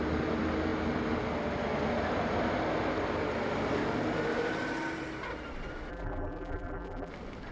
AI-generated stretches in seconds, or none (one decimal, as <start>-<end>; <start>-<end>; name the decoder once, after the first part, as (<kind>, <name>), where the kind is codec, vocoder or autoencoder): 5.9-7.1 (vocoder, BigVGAN v2)